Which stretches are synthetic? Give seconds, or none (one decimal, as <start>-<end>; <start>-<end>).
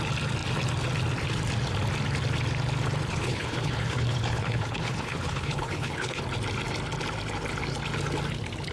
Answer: 3.1-6.2